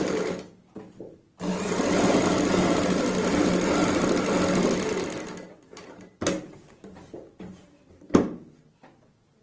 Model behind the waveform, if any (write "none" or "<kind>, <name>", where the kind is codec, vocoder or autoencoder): none